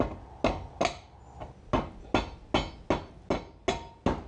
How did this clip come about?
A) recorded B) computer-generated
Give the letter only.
A